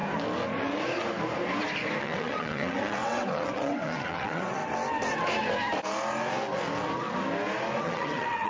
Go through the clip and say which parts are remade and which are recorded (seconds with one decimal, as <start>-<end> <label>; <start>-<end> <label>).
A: 0.0-2.0 recorded; 2.0-4.6 remade; 4.6-7.8 recorded; 7.8-8.5 remade